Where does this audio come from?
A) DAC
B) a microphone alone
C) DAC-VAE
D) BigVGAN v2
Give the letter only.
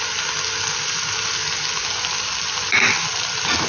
B